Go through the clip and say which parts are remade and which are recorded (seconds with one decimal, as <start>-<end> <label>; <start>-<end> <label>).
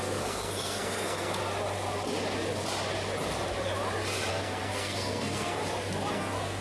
0.0-1.4 remade; 1.4-4.3 recorded; 4.3-5.6 remade; 5.6-6.1 recorded; 6.1-6.6 remade